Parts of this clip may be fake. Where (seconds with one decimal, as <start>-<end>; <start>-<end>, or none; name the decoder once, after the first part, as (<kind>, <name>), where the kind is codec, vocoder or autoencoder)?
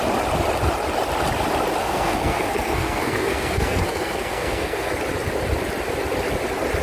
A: 1.8-4.9 (codec, SNAC)